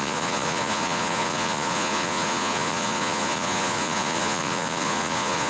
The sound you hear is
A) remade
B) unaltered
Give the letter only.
A